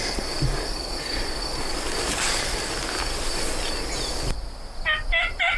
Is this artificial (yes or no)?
no